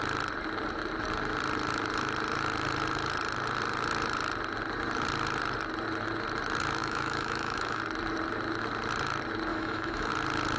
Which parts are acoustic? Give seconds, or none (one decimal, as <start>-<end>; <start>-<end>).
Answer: 0.0-6.8; 7.8-9.5; 10.1-10.6